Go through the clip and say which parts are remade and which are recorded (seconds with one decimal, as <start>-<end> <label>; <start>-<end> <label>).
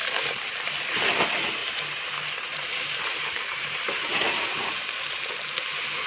0.0-1.6 recorded; 1.6-5.3 remade; 5.3-6.1 recorded